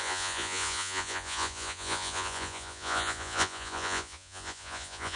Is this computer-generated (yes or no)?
yes